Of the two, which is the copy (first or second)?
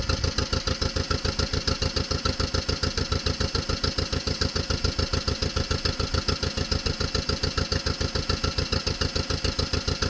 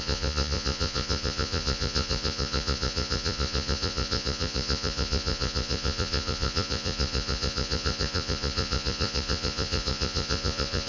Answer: second